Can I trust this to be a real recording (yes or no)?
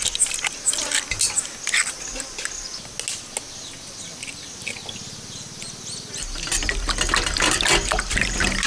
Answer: yes